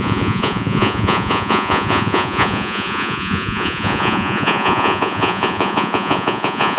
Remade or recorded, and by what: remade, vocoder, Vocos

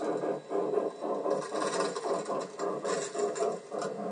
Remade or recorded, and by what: recorded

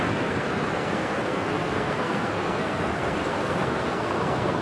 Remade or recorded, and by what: remade, codec, SNAC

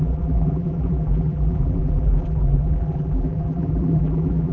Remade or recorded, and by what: remade, vocoder, BigVGAN v2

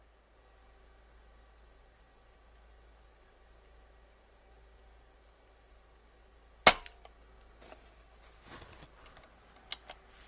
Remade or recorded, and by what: recorded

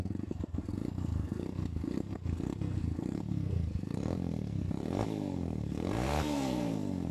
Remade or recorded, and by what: remade, codec, SNAC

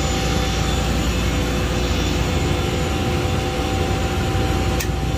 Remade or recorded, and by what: recorded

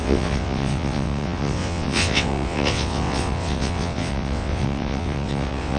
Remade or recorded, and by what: remade, vocoder, WaveNeXt